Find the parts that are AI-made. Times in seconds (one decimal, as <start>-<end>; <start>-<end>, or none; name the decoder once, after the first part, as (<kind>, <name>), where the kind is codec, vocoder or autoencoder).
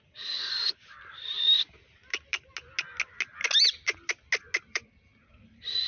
0.0-2.0 (vocoder, BigVGAN v2); 4.6-5.9